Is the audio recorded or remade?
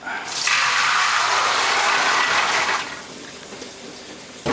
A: recorded